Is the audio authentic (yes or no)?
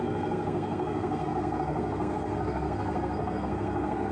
no